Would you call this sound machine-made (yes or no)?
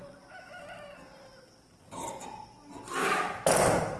no